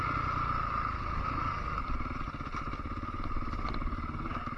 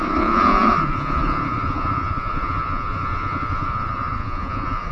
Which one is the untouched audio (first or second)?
first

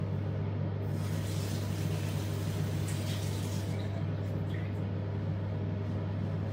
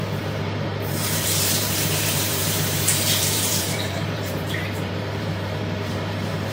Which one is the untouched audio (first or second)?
first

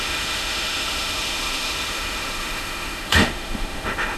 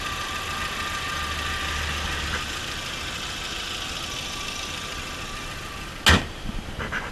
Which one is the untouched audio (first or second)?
second